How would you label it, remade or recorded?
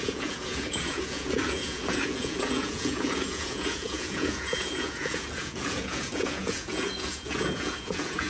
remade